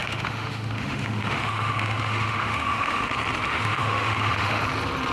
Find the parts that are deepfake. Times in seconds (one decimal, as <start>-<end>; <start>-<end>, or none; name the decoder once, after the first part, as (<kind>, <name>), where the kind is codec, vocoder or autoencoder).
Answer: 0.0-3.1 (autoencoder, DAC-VAE); 3.5-4.6